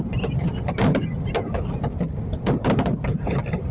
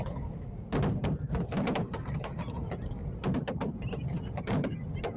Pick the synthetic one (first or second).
first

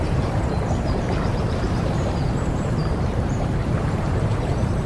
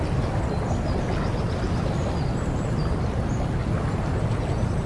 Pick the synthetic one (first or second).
first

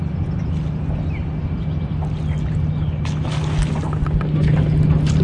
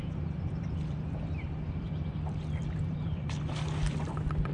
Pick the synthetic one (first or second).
second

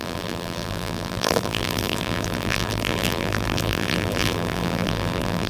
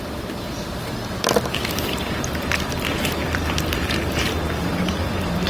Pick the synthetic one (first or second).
first